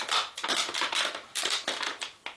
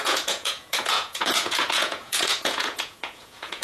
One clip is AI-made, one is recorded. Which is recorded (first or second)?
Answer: first